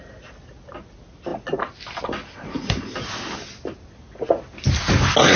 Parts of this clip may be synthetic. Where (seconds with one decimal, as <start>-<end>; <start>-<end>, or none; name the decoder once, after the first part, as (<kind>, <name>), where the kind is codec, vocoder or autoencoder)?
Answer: none